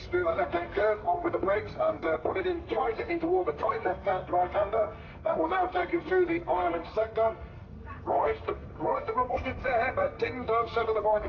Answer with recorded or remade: remade